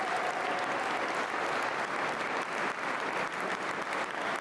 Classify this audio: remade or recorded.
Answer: recorded